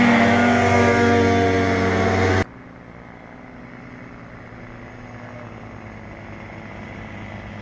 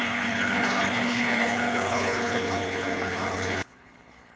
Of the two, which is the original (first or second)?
first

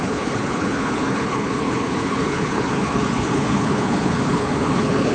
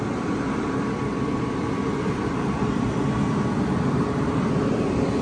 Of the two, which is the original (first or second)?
second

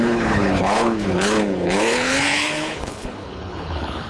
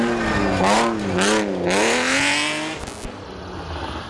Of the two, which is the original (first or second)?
second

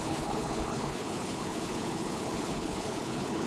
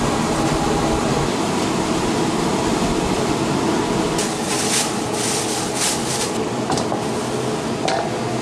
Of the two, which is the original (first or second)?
second